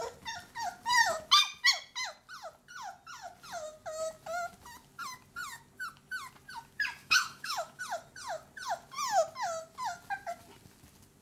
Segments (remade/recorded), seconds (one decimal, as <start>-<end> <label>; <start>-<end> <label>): 0.0-7.0 recorded; 7.0-7.8 remade; 7.8-11.2 recorded